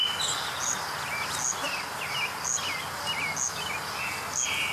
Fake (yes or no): no